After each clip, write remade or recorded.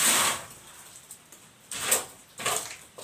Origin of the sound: recorded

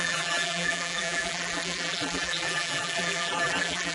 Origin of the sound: remade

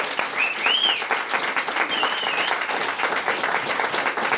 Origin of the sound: recorded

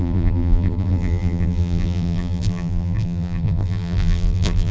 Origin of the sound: remade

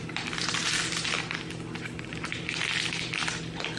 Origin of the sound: recorded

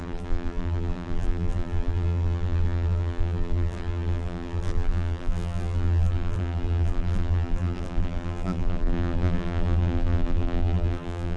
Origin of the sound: remade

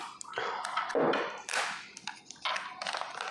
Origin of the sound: recorded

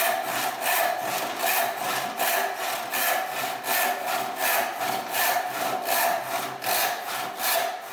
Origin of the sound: recorded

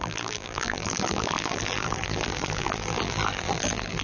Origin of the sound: remade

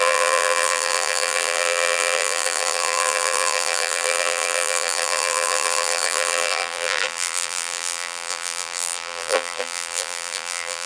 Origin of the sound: remade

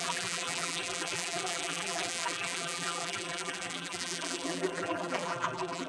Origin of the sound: remade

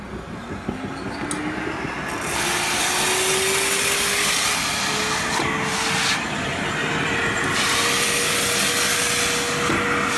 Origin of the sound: recorded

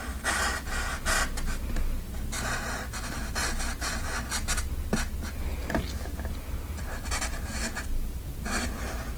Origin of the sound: recorded